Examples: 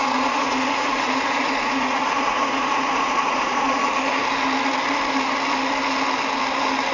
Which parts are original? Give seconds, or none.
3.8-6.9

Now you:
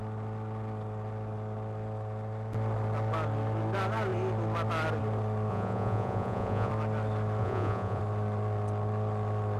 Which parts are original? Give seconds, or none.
0.0-5.5; 6.7-7.4; 8.0-9.6

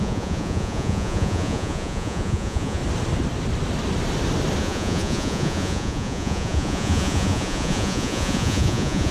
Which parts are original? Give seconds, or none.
2.8-4.6

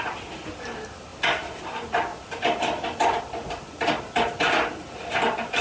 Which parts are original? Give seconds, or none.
0.0-5.6

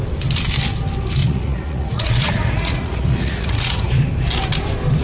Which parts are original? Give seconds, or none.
0.0-1.2; 3.9-5.0

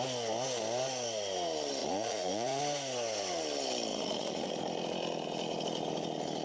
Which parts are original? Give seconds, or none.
0.0-1.8; 2.6-3.9; 4.5-6.4

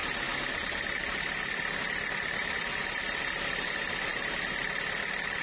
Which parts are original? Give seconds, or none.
0.0-5.4